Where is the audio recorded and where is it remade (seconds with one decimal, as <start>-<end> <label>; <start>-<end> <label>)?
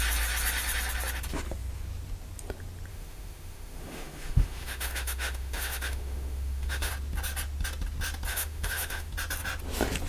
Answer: 0.0-2.9 recorded; 2.9-6.9 remade; 6.9-8.3 recorded; 8.3-9.1 remade; 9.1-10.1 recorded